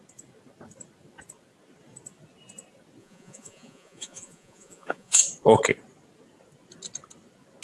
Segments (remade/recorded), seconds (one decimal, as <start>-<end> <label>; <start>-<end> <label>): 0.0-3.0 recorded; 3.0-5.2 remade; 5.2-7.6 recorded